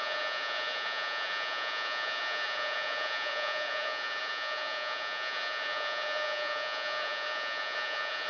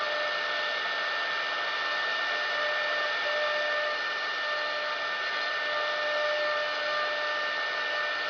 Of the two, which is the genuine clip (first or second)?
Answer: second